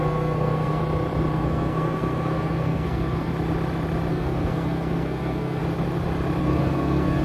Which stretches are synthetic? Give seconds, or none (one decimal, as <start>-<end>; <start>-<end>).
0.0-0.8; 1.3-3.3; 4.1-5.6; 6.4-7.2